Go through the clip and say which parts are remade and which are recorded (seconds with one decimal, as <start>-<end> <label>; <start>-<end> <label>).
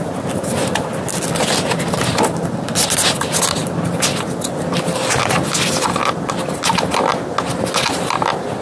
0.0-8.6 recorded